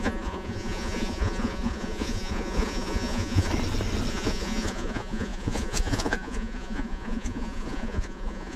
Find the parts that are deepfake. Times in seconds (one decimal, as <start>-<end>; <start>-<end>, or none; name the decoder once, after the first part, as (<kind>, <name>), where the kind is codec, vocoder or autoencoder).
0.0-3.5 (vocoder, Vocos); 4.1-8.6